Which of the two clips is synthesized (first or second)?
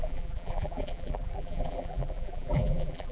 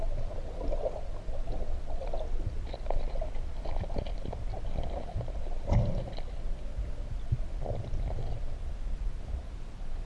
first